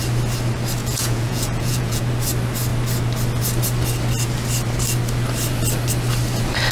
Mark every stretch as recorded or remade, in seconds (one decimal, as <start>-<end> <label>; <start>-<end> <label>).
0.0-0.8 recorded; 0.8-2.0 remade; 2.0-6.7 recorded